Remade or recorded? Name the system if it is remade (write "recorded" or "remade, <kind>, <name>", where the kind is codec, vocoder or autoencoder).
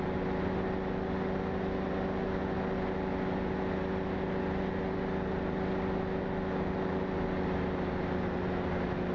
recorded